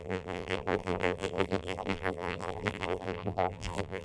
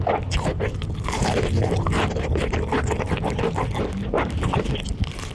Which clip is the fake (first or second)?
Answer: first